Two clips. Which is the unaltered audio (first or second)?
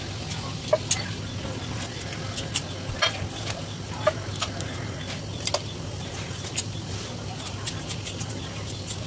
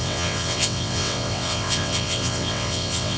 first